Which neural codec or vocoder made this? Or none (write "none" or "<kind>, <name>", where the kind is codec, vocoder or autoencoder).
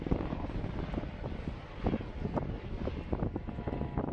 none